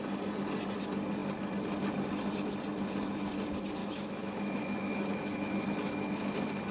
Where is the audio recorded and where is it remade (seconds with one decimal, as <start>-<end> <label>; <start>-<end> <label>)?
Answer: 0.0-3.8 recorded; 3.8-6.7 remade